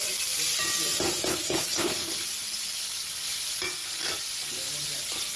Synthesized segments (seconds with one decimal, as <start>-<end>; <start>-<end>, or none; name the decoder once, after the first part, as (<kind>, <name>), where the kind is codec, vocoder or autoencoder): 1.3-2.1 (codec, HILCodec)